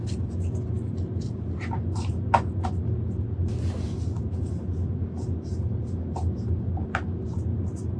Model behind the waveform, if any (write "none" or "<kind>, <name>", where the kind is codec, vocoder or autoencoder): none